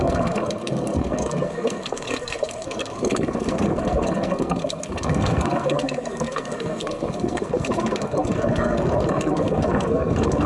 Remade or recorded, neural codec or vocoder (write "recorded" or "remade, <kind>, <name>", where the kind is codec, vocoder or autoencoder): remade, codec, SNAC